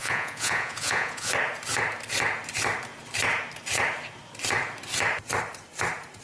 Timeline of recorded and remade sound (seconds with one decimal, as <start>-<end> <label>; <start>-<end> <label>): 0.0-1.3 remade; 1.3-6.2 recorded